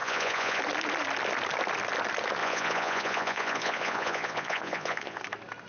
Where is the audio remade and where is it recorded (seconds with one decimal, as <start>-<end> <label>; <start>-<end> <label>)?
0.0-0.6 remade; 0.6-2.4 recorded; 2.4-5.2 remade; 5.2-5.7 recorded